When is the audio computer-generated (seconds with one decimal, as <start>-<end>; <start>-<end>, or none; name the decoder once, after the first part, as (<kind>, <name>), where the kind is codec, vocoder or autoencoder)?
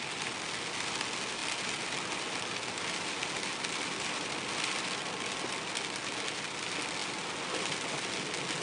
none